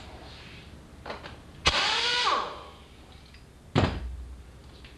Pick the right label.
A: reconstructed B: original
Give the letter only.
B